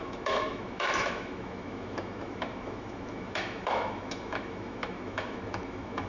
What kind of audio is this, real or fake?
fake